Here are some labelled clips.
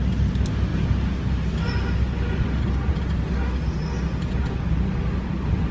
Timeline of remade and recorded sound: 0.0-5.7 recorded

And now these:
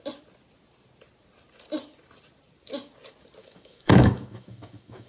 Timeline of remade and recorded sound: 0.0-3.4 recorded; 3.4-5.1 remade

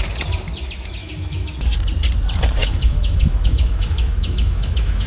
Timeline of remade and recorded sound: 0.0-1.0 recorded; 1.0-1.5 remade; 1.5-2.6 recorded; 2.6-5.1 remade

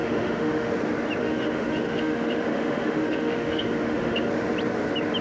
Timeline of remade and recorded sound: 0.0-0.7 remade; 0.7-1.2 recorded; 1.2-4.3 remade; 4.3-5.2 recorded

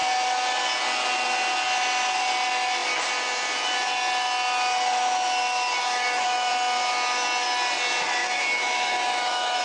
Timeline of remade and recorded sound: 0.0-5.8 recorded; 5.8-6.5 remade; 6.5-8.2 recorded; 8.2-9.6 remade

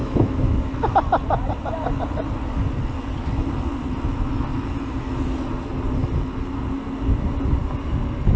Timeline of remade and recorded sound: 0.0-0.7 remade; 0.7-8.4 recorded